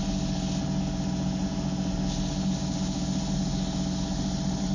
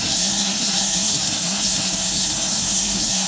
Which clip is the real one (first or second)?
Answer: first